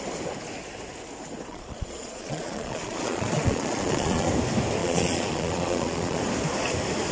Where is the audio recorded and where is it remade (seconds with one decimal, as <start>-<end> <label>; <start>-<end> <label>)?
0.0-1.5 recorded; 1.5-4.3 remade; 4.3-4.8 recorded; 4.8-6.2 remade; 6.2-7.1 recorded